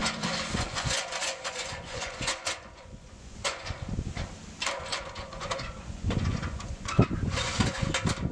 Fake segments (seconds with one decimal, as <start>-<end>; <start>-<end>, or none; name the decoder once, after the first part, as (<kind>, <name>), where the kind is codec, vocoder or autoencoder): 0.0-3.8 (vocoder, Vocos); 4.9-7.8

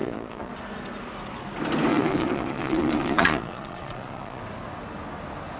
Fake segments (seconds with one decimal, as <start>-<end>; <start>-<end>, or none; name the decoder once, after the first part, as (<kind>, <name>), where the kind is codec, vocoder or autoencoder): 0.0-0.5 (vocoder, Vocos); 1.9-4.4

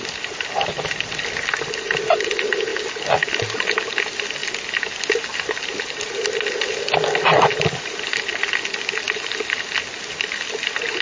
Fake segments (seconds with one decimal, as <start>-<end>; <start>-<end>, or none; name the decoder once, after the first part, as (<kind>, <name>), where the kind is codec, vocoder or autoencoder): none

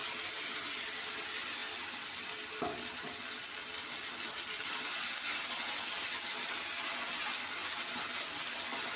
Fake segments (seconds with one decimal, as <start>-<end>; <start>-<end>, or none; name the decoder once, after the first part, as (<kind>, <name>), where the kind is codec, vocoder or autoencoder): none

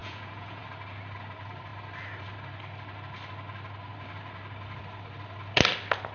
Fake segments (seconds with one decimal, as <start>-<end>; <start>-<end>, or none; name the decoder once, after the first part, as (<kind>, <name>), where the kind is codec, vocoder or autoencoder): 0.0-0.6 (vocoder, Vocos)

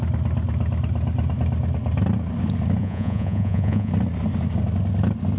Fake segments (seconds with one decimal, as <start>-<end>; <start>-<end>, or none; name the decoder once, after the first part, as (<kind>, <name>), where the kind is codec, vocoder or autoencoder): 2.8-3.9 (vocoder, Vocos)

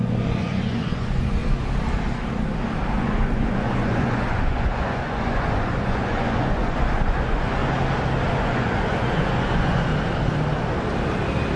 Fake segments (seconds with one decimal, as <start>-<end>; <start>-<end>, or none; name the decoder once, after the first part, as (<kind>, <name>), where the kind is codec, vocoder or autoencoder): 0.0-1.4 (vocoder, Vocos); 3.0-7.6; 8.3-9.9